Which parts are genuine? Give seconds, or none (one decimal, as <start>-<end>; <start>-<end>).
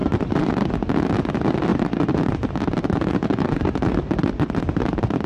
0.7-1.7; 4.6-5.3